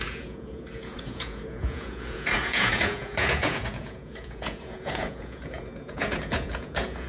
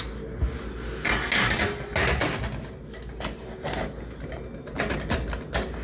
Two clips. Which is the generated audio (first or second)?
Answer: first